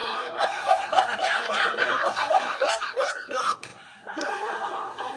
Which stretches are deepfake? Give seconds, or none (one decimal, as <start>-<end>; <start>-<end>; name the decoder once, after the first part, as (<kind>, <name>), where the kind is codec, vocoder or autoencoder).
0.0-5.2 (codec, SNAC)